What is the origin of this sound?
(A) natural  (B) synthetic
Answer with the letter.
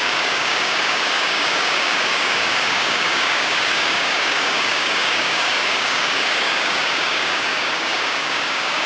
B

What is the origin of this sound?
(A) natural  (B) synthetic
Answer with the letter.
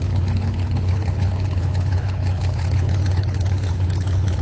B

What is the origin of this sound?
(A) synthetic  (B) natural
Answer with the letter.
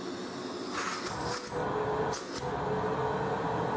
B